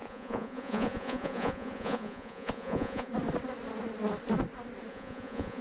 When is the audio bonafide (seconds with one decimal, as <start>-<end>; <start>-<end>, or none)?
3.1-4.9